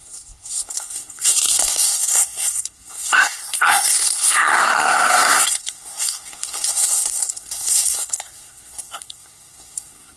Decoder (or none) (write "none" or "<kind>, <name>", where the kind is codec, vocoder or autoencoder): codec, SNAC